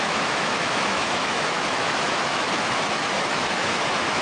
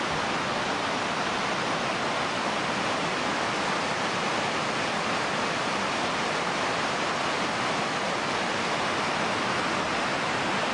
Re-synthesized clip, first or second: first